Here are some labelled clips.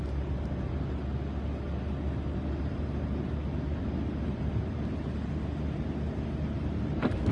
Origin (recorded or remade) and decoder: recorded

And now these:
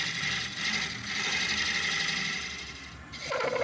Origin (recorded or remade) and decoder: recorded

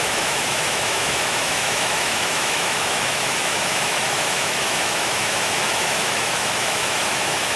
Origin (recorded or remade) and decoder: remade, autoencoder, DAC-VAE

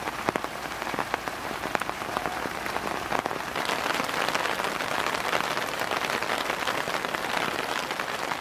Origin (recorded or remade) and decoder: remade, vocoder, BigVGAN v2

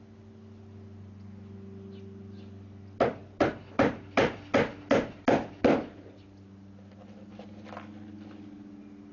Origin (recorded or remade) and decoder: recorded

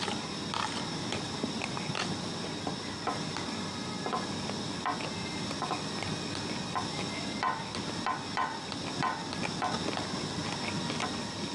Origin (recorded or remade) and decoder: recorded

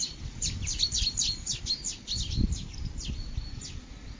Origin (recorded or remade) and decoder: recorded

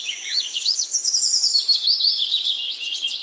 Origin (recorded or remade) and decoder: remade, codec, DAC